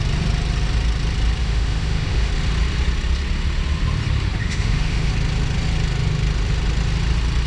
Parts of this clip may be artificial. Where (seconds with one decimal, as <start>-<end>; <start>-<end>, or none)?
1.4-2.3; 4.4-5.1